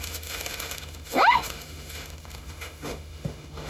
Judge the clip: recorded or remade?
remade